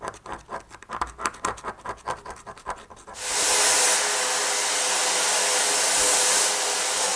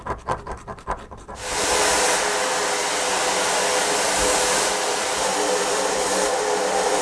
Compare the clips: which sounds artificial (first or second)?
second